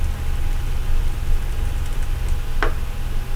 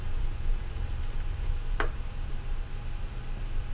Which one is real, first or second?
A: first